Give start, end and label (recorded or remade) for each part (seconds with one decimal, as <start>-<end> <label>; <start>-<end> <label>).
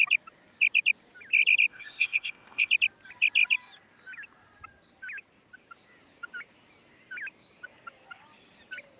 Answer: 0.0-1.7 recorded; 1.7-2.7 remade; 2.7-9.0 recorded